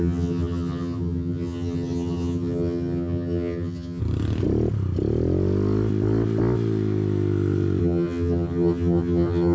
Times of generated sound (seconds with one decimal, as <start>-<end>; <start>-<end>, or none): 0.0-4.0; 7.8-9.5